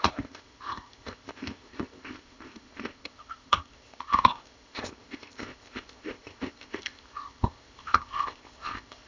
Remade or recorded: remade